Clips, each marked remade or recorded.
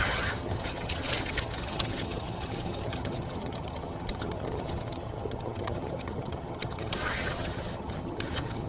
remade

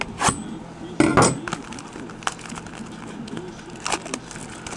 recorded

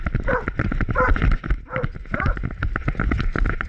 recorded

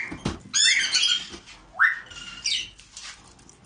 recorded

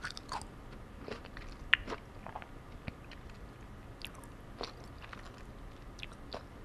recorded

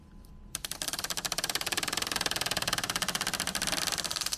recorded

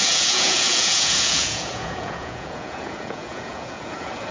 remade